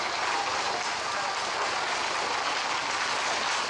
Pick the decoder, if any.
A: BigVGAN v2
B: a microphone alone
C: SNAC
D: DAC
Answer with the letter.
B